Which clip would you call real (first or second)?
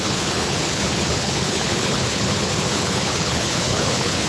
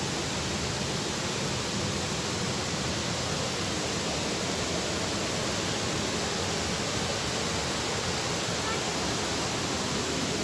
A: second